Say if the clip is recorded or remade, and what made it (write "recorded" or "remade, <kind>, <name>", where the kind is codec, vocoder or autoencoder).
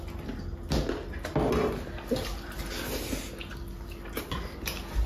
recorded